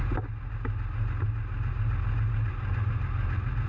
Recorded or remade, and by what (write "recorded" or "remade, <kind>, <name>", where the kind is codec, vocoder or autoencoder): recorded